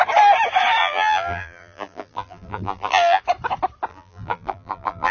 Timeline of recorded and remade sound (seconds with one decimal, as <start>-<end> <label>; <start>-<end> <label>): 0.0-0.8 recorded; 0.8-3.2 remade; 3.2-3.9 recorded; 3.9-5.1 remade